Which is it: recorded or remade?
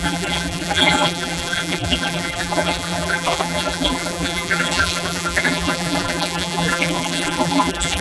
remade